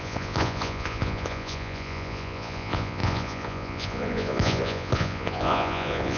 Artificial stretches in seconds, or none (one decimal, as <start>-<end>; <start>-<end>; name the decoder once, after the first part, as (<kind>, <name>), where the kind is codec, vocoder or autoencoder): 0.0-6.2 (vocoder, Vocos)